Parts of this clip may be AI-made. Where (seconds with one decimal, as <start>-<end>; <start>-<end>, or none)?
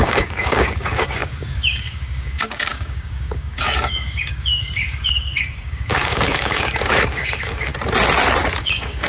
0.0-7.7; 8.6-9.1